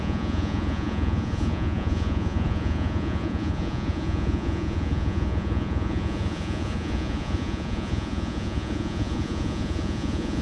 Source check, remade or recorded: remade